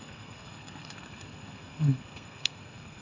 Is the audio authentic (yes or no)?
no